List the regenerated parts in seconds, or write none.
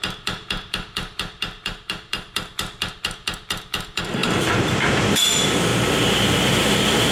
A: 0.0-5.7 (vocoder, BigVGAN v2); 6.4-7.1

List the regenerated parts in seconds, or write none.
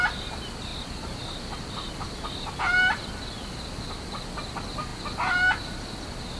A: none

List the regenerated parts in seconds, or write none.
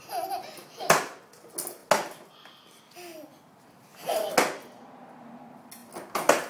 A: none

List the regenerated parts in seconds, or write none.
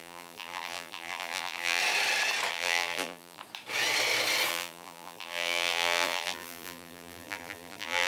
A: 0.0-1.8 (vocoder, BigVGAN v2); 2.5-3.4; 4.5-8.1